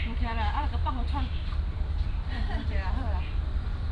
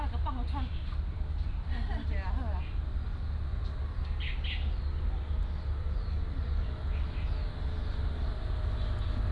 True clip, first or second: second